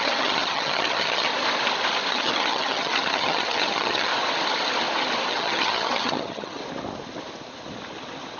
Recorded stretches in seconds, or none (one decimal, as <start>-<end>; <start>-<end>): 1.3-2.1; 4.1-5.3; 6.6-8.4